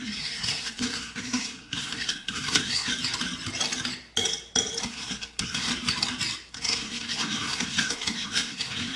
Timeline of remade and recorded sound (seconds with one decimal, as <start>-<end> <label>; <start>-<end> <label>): 0.0-2.9 remade; 2.9-4.8 recorded; 4.8-5.7 remade; 5.7-6.5 recorded; 6.5-9.0 remade